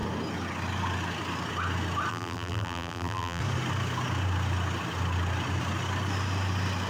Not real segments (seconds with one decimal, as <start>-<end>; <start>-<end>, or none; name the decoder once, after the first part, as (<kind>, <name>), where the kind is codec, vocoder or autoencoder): 2.1-3.4 (vocoder, BigVGAN v2)